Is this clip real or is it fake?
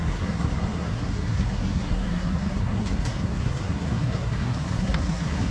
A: fake